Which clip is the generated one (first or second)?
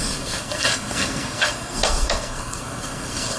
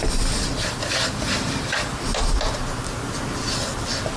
first